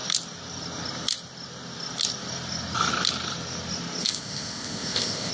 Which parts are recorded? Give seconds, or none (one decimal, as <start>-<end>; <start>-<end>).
0.0-4.0